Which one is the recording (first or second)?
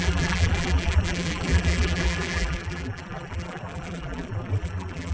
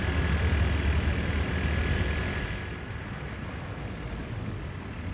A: second